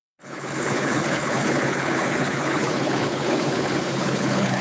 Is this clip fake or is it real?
fake